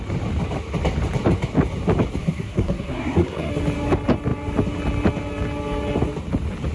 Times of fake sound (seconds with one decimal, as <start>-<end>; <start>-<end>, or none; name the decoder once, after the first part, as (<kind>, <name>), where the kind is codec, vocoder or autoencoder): 2.2-3.5 (codec, SNAC)